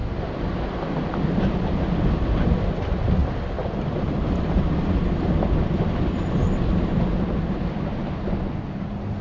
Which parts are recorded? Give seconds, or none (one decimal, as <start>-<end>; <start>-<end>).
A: 0.0-9.2